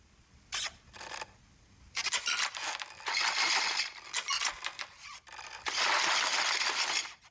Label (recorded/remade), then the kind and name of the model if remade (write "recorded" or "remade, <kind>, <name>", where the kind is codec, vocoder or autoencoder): recorded